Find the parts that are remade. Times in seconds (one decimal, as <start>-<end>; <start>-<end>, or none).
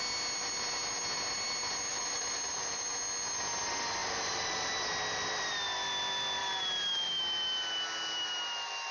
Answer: 1.9-2.9; 4.0-4.7; 6.4-7.2